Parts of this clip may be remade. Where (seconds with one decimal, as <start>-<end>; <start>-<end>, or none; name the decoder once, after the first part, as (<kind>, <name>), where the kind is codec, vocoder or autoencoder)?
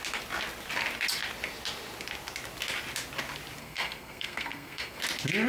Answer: 3.6-5.0 (codec, SNAC)